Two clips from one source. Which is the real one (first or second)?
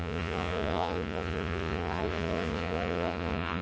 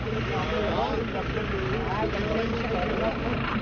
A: second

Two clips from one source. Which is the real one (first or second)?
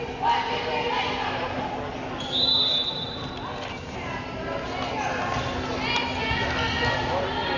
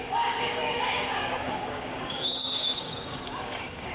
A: first